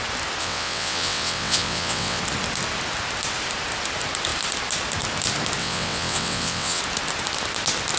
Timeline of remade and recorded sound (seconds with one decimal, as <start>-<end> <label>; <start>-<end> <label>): 0.0-0.4 recorded; 0.4-2.2 remade; 2.2-5.6 recorded; 5.6-6.8 remade; 6.8-8.0 recorded

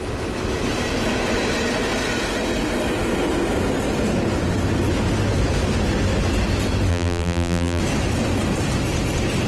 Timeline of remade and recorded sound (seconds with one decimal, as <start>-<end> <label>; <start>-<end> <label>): 0.0-6.9 recorded; 6.9-7.8 remade; 7.8-9.5 recorded

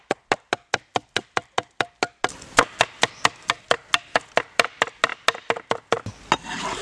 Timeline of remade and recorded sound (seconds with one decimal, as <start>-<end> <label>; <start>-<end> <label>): 0.0-6.8 recorded

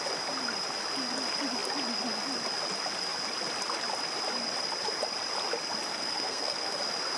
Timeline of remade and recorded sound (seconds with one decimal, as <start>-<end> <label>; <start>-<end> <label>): 0.0-5.9 recorded; 5.9-6.8 remade; 6.8-7.2 recorded

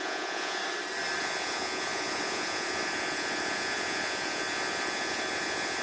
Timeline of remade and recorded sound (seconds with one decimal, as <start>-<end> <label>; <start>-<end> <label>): 0.0-0.6 remade; 0.6-1.2 recorded; 1.2-5.8 remade